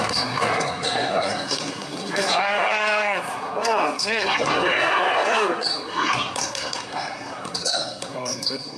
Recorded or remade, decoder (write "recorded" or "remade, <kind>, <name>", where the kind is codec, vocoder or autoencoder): remade, codec, SNAC